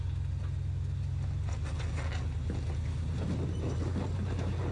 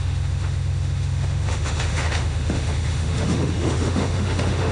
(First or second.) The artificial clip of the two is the second